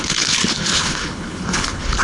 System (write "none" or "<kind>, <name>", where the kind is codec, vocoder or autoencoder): codec, HILCodec